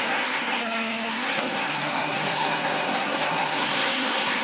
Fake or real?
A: fake